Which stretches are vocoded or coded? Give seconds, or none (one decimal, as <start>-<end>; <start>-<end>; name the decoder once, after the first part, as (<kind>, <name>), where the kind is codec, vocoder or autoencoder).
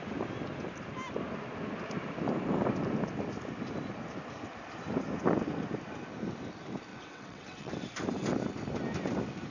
6.9-7.7 (vocoder, WaveNeXt)